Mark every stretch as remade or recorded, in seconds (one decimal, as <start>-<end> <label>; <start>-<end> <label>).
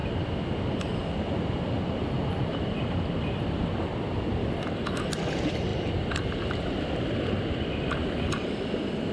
0.0-9.1 recorded